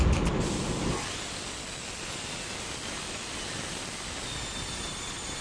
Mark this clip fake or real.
real